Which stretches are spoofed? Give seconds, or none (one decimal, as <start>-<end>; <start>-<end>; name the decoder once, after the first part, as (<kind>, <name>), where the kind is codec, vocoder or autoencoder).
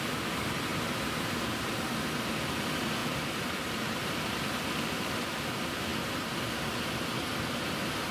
none